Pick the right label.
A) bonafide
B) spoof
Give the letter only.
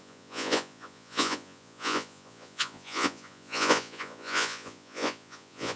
B